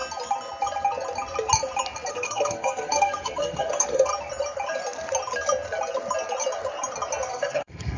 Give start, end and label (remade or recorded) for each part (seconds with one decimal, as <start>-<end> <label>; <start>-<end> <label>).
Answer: 0.0-2.1 recorded; 2.1-4.1 remade; 4.1-7.3 recorded; 7.3-8.0 remade